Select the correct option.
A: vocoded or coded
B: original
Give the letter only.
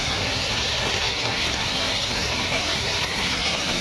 A